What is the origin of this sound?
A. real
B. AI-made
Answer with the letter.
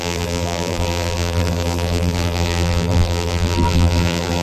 B